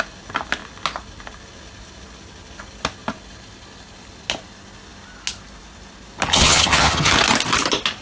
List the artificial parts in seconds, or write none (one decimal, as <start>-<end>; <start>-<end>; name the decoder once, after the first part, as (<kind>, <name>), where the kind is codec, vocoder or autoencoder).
6.3-7.1 (vocoder, HiFi-GAN)